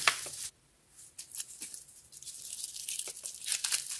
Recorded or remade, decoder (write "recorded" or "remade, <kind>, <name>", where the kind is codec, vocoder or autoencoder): recorded